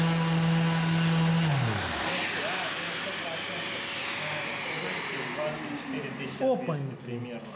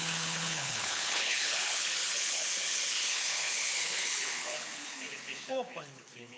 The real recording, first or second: first